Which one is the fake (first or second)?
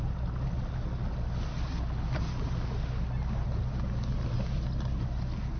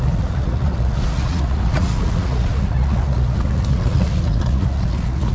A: second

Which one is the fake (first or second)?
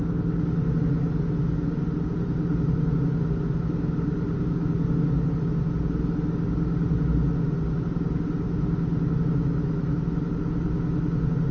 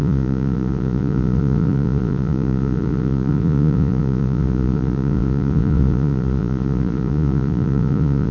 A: second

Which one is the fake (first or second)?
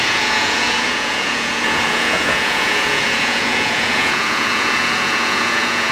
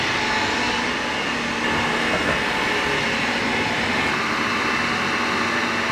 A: first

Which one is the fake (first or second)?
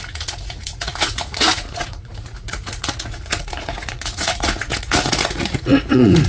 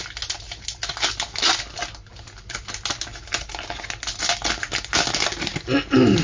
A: first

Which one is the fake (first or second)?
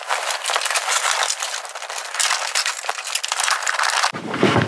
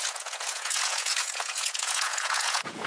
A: second